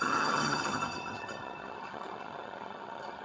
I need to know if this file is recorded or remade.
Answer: remade